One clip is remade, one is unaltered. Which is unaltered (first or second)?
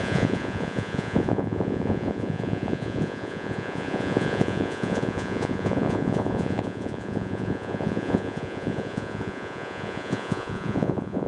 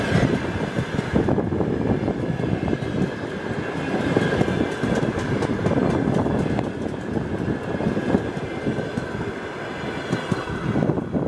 second